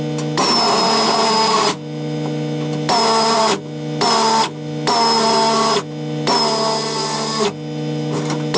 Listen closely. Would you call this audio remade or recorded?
recorded